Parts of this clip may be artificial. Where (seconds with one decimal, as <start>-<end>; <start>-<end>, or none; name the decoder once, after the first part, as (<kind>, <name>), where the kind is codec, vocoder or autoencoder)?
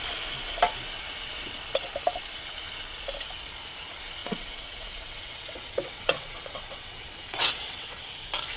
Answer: 4.2-8.0 (vocoder, WaveNeXt)